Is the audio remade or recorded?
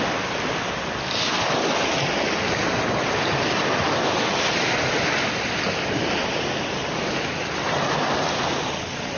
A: recorded